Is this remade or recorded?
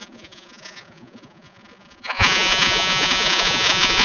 remade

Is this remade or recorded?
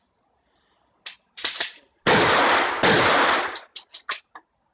recorded